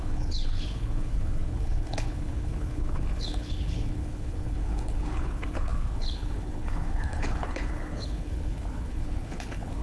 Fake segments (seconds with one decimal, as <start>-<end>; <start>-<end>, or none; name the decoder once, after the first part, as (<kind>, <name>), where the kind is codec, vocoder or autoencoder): 0.0-9.8 (codec, HILCodec)